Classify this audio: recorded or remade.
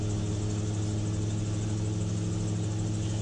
recorded